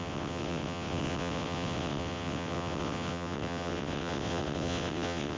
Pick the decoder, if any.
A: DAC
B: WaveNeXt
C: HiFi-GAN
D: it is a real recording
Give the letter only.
B